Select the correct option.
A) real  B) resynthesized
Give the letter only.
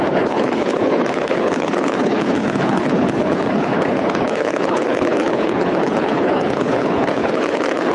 B